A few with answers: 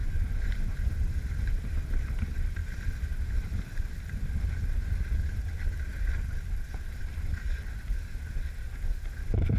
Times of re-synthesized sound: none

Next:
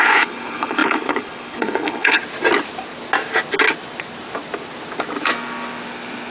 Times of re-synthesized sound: 0.0-2.2 (codec, HILCodec)

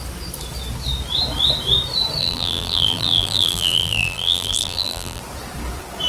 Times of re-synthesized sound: 2.2-5.2 (vocoder, BigVGAN v2)

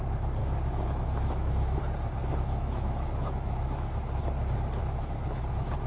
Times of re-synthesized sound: 0.4-1.8 (autoencoder, DAC-VAE); 2.2-4.2; 4.8-5.4